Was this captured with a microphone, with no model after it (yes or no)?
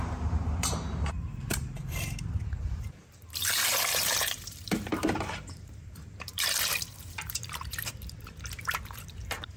no